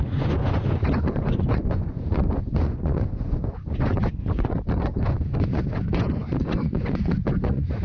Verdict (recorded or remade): remade